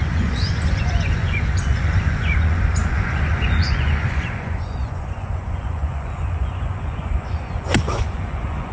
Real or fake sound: fake